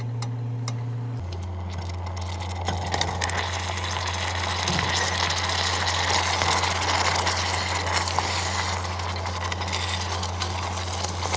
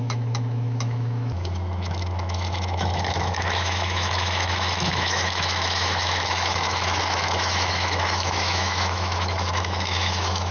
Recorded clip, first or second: first